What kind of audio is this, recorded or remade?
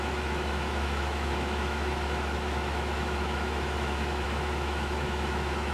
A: remade